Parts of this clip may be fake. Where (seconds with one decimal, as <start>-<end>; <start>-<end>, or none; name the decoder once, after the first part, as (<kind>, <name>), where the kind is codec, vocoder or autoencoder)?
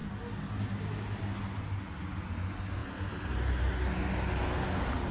none